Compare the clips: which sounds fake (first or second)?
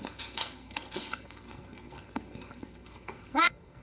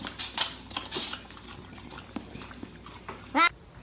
first